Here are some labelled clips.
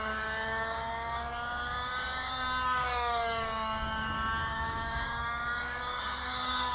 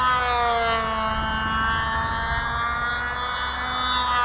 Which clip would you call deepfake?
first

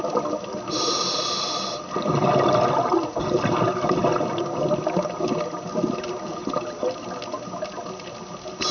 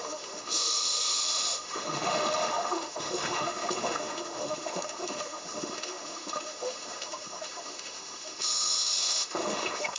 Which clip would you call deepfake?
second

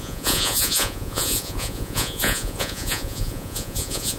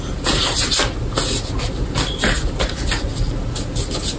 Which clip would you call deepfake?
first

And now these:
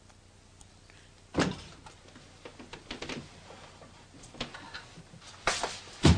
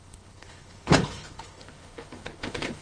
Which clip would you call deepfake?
second